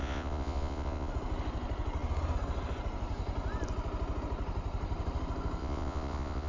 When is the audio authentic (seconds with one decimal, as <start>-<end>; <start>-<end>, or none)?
1.1-5.6